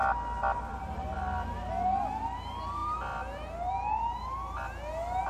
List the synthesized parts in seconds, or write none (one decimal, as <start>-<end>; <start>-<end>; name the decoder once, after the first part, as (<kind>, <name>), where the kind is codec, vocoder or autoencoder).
none